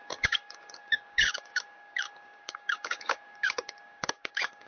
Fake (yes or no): yes